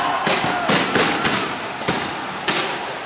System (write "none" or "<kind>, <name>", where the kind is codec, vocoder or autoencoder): none